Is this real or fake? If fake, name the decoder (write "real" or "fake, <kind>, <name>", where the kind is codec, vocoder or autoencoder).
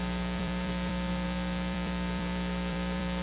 fake, vocoder, BigVGAN v2